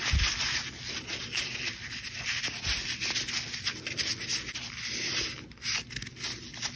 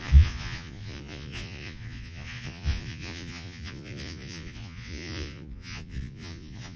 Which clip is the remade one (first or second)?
second